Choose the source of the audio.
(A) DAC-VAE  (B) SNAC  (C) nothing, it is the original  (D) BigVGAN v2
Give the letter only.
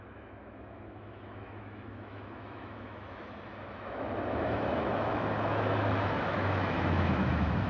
A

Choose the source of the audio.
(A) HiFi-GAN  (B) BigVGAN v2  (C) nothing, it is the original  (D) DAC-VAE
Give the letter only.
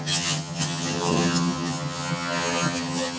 A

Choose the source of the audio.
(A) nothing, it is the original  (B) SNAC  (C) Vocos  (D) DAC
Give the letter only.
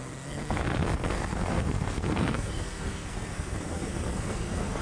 B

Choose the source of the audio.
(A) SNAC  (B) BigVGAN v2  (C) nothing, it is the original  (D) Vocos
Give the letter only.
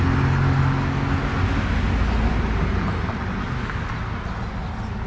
C